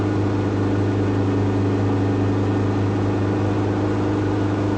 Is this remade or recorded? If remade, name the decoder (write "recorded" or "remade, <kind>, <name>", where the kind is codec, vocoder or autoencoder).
recorded